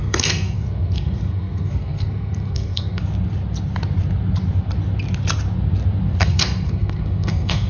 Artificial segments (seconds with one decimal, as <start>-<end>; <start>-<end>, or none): 0.0-3.0; 6.2-7.7